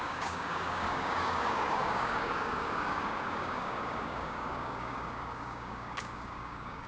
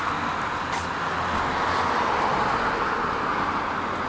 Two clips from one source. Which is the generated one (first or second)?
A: first